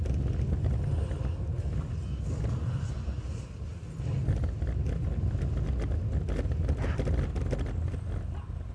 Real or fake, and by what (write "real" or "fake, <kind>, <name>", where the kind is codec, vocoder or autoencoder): real